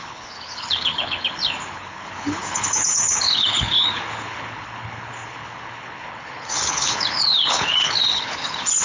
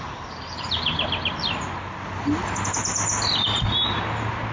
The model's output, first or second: first